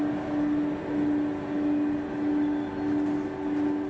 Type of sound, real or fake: real